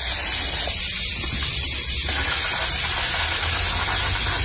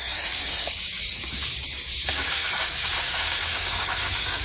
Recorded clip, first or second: first